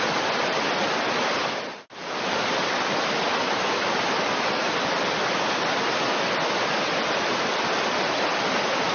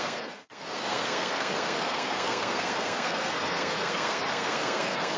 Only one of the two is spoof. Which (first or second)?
second